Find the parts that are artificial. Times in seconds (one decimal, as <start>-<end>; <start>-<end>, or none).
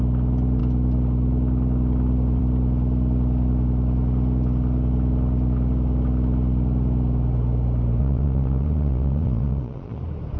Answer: 8.0-10.0